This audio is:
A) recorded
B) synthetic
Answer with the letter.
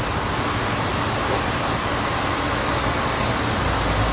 A